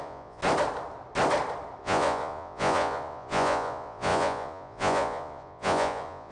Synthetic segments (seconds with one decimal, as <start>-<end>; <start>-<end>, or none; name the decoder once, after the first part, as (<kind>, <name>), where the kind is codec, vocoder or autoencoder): 0.0-0.4 (vocoder, Vocos); 1.8-6.3